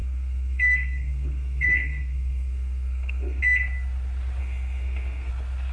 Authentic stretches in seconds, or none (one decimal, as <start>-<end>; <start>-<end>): 3.4-4.4; 5.3-5.7